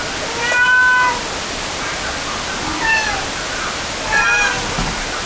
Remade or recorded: recorded